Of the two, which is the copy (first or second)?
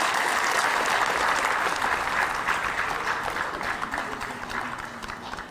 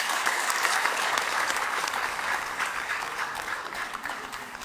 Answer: second